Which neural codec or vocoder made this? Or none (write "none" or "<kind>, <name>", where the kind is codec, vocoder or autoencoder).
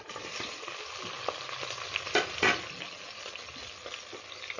none